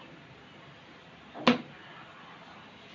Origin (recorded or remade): recorded